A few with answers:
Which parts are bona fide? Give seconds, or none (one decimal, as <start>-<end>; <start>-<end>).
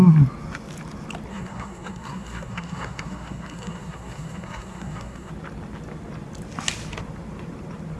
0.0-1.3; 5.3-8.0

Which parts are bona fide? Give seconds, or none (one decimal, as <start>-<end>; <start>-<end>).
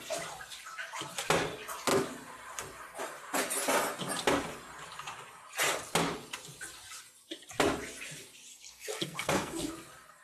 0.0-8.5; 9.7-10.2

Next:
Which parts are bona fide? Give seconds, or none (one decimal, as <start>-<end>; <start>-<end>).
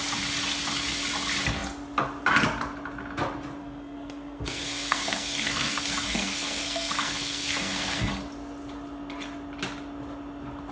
0.0-3.6; 8.1-10.7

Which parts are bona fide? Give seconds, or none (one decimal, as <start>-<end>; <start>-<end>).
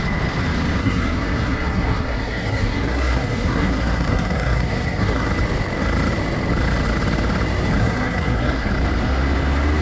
0.0-0.8; 5.3-7.8; 8.7-9.8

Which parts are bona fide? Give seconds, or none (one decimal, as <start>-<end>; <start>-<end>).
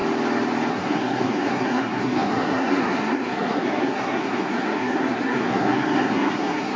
0.0-0.7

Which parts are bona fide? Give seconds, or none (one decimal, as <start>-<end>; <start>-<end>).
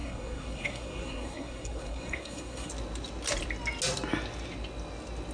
2.7-5.3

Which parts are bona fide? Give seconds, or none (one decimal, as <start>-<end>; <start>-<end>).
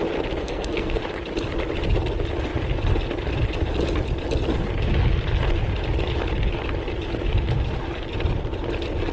0.0-0.4; 1.0-9.1